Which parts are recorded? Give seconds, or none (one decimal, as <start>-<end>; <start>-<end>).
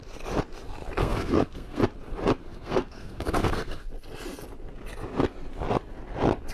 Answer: 0.0-1.0; 1.8-2.4; 3.8-6.5